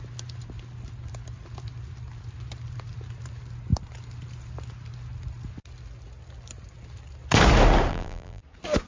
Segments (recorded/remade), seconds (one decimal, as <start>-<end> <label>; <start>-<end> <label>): 0.0-7.9 recorded; 7.9-8.4 remade; 8.4-8.9 recorded